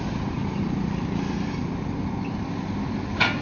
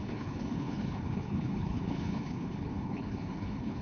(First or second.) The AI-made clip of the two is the second